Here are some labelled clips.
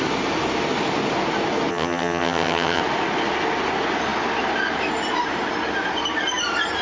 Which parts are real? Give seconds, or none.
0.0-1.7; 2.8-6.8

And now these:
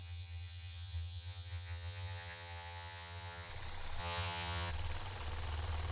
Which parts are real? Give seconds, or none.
3.5-4.0; 4.7-5.9

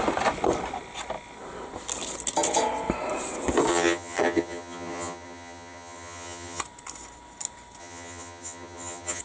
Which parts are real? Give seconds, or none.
0.0-3.7; 6.6-7.8

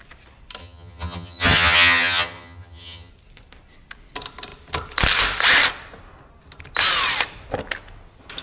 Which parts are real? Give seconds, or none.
0.0-0.6; 3.1-8.4

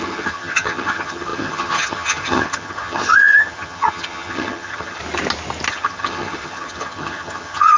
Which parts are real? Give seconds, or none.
5.0-5.7